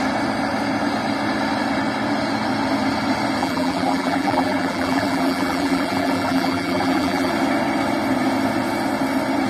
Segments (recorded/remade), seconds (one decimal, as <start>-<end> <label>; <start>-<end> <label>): 0.0-3.4 recorded; 3.4-7.3 remade; 7.3-9.5 recorded